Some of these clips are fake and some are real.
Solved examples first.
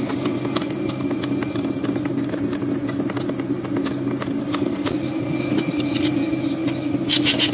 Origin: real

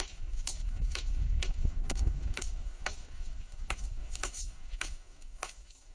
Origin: fake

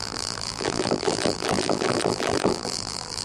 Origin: fake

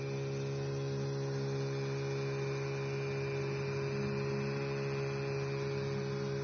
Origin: real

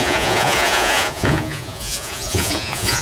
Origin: fake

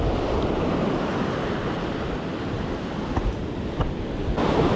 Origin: real